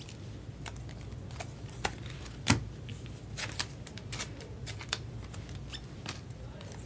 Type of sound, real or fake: real